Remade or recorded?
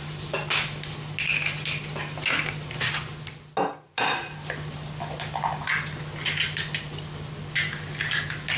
recorded